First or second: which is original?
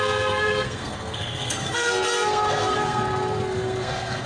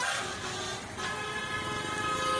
second